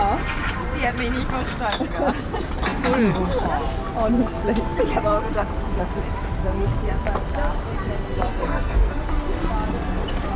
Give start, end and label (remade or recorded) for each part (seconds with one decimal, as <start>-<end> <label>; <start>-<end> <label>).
0.0-8.3 recorded; 8.3-8.9 remade; 8.9-10.4 recorded